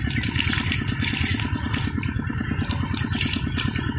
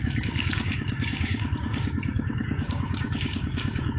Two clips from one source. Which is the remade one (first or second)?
second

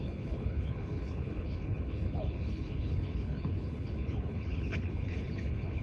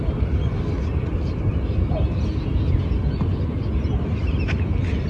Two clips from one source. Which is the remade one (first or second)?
first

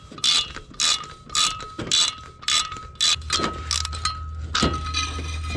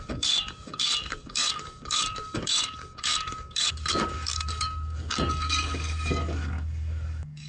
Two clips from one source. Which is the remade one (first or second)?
second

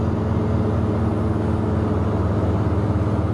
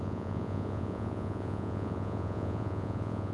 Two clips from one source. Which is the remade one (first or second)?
second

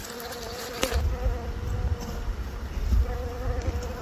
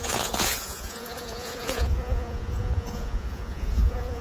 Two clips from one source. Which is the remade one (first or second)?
second